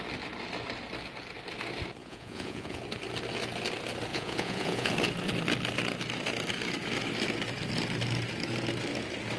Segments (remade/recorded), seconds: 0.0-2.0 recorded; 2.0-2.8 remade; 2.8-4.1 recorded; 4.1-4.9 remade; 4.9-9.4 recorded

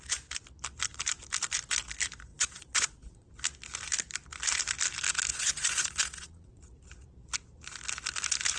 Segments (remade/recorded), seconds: 0.0-2.3 recorded; 2.3-3.3 remade; 3.3-5.3 recorded; 5.3-6.6 remade; 6.6-8.6 recorded

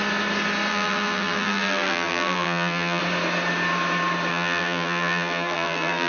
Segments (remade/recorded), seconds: 0.0-0.7 recorded; 0.7-3.0 remade; 3.0-4.3 recorded; 4.3-6.1 remade

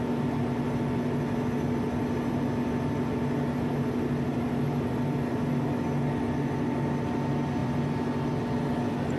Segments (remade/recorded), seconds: 0.0-9.2 recorded